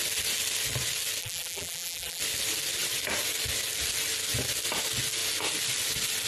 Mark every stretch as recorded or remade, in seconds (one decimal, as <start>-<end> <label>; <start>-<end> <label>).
0.0-1.2 recorded; 1.2-2.2 remade; 2.2-6.3 recorded